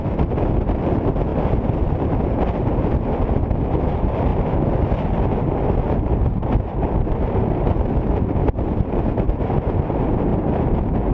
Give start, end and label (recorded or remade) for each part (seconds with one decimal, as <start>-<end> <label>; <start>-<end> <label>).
0.0-1.3 recorded; 1.3-2.5 remade; 2.5-4.3 recorded; 4.3-9.5 remade; 9.5-11.1 recorded